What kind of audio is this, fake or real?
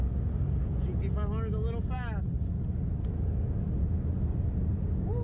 real